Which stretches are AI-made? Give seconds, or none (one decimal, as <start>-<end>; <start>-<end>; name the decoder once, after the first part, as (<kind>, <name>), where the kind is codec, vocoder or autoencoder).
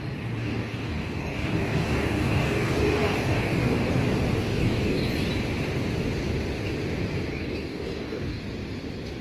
0.4-3.9 (codec, DAC); 4.4-5.1; 7.3-8.4